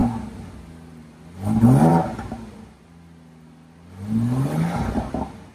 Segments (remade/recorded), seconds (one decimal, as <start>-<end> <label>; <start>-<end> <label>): 0.0-5.5 recorded